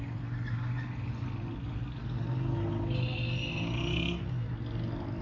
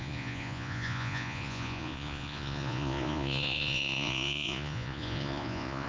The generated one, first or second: second